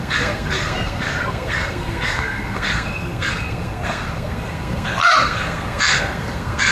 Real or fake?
fake